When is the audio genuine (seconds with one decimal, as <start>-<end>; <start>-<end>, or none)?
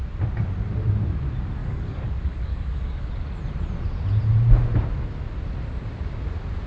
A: 0.0-1.6; 3.1-6.7